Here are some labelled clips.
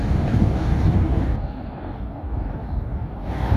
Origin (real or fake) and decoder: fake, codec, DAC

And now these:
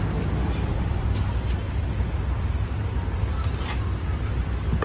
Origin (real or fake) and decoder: real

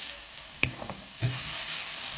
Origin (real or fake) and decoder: fake, codec, DAC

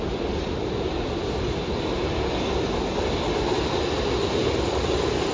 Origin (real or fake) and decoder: real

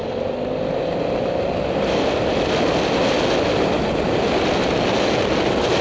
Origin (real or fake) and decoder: real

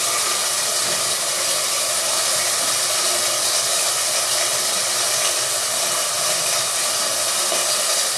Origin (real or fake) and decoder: real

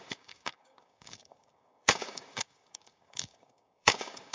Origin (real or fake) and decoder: fake, codec, DAC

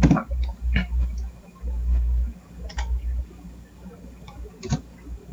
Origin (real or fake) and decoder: fake, codec, DAC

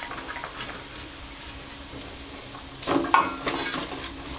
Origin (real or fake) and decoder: real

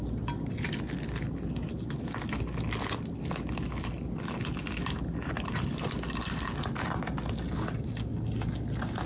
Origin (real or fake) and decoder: real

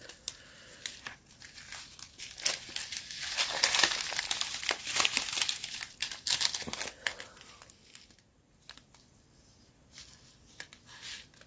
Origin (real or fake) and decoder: real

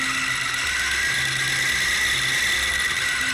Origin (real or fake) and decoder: real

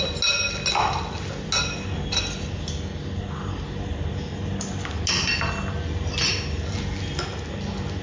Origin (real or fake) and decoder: real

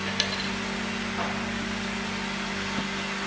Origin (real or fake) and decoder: real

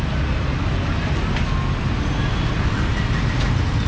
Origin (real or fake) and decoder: real